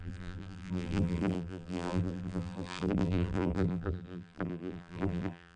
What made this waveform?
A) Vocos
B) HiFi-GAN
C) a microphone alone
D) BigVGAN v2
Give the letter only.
D